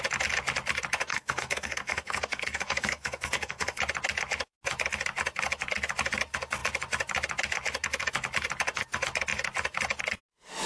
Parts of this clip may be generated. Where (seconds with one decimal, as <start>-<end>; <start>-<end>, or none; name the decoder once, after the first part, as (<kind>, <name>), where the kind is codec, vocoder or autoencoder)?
1.1-3.8 (codec, SNAC)